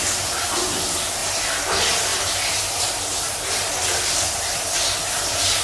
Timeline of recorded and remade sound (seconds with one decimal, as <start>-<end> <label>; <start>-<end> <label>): 0.0-5.6 recorded